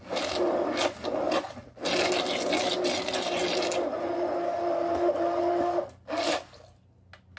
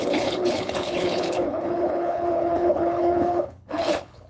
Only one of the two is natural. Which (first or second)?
first